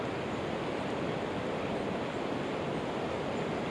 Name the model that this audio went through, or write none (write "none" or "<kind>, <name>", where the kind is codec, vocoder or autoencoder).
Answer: none